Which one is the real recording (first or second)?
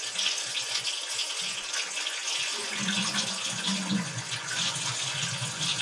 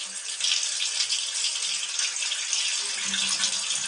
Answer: second